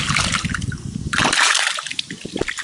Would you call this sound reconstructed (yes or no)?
no